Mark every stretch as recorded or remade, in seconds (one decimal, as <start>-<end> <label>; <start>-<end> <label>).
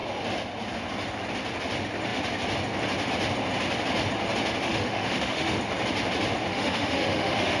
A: 0.0-4.6 recorded; 4.6-5.6 remade; 5.6-6.5 recorded; 6.5-7.6 remade